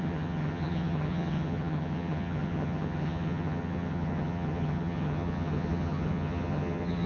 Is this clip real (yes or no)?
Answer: no